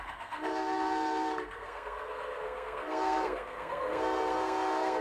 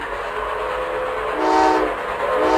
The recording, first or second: second